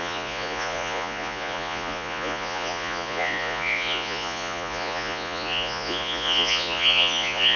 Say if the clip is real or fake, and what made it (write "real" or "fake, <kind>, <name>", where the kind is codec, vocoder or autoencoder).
fake, vocoder, Vocos